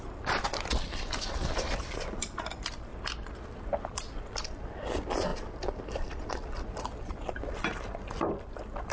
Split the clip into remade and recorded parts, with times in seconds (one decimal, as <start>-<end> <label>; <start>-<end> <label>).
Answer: 0.0-8.9 recorded